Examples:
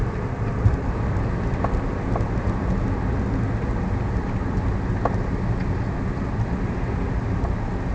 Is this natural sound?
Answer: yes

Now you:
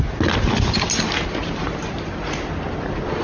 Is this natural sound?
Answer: yes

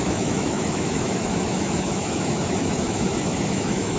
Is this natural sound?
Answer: no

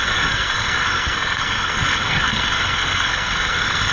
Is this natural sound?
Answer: no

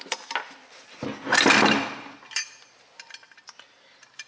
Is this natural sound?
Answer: yes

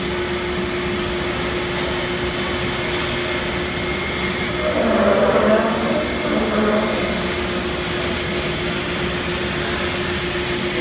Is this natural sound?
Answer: yes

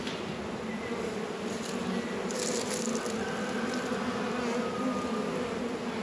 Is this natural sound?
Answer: yes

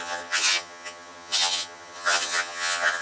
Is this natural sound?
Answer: no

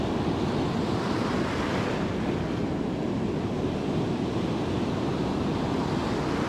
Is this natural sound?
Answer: yes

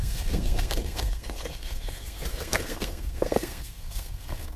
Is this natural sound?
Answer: no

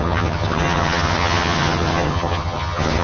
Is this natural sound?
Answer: no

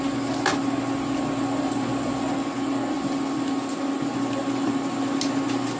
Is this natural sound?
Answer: yes